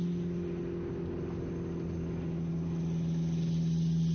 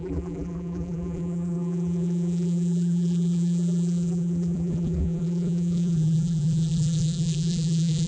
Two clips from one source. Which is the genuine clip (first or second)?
first